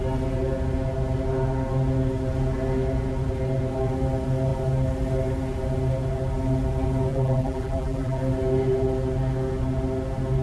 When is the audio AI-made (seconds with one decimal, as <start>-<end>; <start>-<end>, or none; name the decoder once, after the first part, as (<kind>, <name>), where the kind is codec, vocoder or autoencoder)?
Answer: 7.1-8.2 (vocoder, BigVGAN v2)